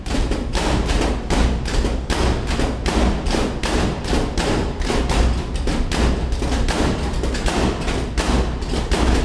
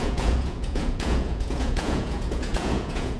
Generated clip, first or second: second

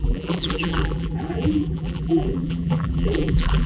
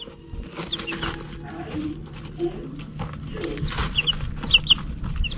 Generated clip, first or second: first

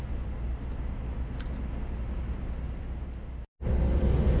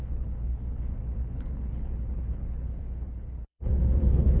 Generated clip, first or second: second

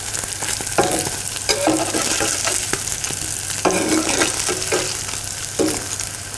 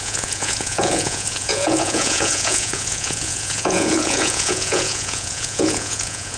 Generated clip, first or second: second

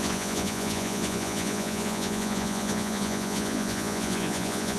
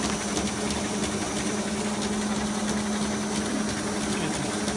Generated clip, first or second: first